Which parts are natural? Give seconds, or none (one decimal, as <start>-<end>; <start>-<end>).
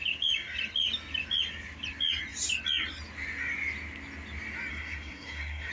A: 0.0-4.7